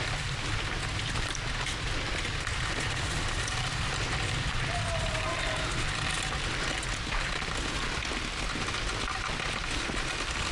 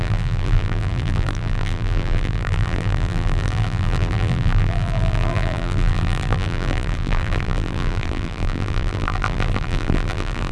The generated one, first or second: second